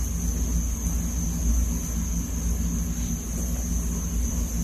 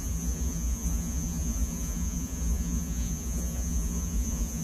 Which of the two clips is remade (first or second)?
second